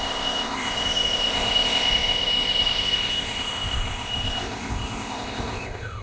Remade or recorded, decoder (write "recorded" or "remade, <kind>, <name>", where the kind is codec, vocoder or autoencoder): remade, codec, ZipCodec